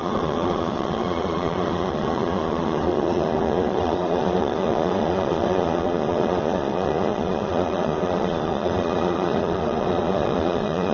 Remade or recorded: remade